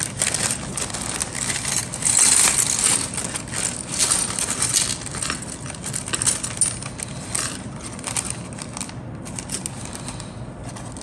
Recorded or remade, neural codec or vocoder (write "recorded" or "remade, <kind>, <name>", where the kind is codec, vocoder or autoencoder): recorded